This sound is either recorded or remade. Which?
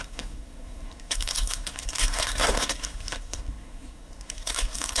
remade